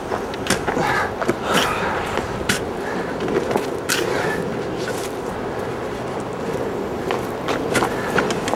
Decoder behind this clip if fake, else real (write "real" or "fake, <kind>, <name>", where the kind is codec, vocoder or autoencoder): real